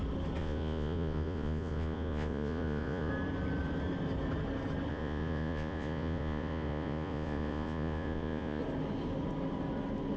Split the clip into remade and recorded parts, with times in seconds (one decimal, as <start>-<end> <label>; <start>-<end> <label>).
0.0-0.4 recorded; 0.4-3.1 remade; 3.1-4.9 recorded; 4.9-8.6 remade; 8.6-10.2 recorded